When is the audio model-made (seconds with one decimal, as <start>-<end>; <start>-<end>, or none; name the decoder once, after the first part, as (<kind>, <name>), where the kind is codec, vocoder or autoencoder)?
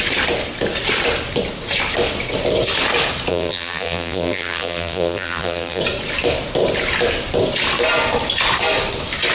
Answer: 3.3-5.8 (vocoder, BigVGAN v2)